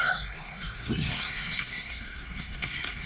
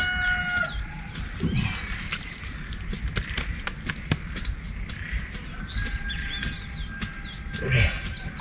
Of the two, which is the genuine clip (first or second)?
second